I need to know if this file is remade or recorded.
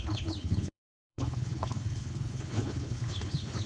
remade